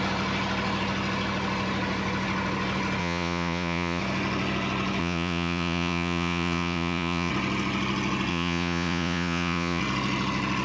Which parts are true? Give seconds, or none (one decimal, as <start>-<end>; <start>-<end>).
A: 0.0-3.0; 4.0-5.0; 7.3-8.3; 9.8-10.6